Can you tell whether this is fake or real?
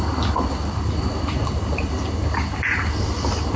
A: real